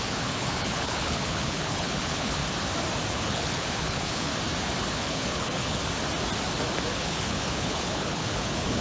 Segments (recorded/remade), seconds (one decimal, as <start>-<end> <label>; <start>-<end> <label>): 0.0-2.4 remade; 2.4-3.1 recorded; 3.1-4.3 remade; 4.3-4.9 recorded; 4.9-5.8 remade; 5.8-6.9 recorded; 6.9-8.8 remade

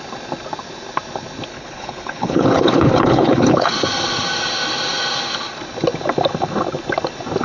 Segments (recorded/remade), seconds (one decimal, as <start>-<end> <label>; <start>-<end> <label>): 0.0-1.5 recorded; 1.5-3.7 remade; 3.7-7.4 recorded

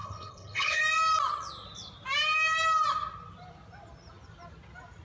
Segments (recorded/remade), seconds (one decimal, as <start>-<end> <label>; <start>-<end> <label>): 0.0-0.8 remade; 0.8-5.0 recorded

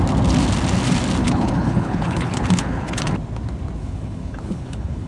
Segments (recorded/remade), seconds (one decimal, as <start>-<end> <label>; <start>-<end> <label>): 0.0-1.2 recorded; 1.2-3.1 remade; 3.1-3.8 recorded; 3.8-5.1 remade

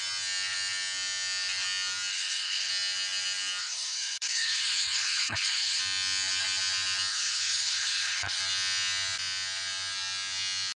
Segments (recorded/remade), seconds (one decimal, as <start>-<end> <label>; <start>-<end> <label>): 0.0-2.1 recorded; 2.1-2.7 remade; 2.7-3.6 recorded; 3.6-5.8 remade; 5.8-7.1 recorded; 7.1-8.4 remade; 8.4-10.8 recorded